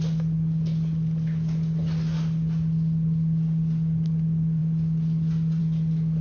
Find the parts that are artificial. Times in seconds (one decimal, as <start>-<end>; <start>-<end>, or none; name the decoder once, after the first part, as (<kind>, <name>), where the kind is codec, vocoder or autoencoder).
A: none